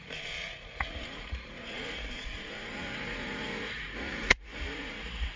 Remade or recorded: remade